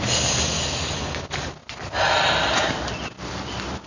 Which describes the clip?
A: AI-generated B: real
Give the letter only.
B